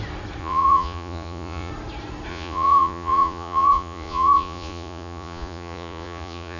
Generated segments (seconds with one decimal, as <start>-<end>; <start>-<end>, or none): 0.4-1.7; 2.3-6.6